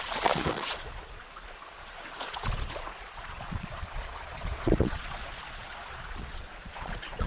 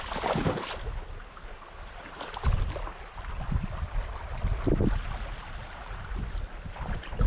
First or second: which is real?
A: second